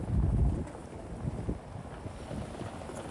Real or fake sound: real